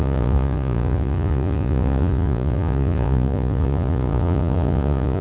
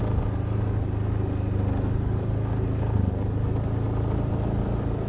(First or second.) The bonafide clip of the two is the second